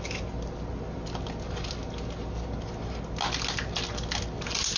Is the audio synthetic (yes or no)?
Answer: no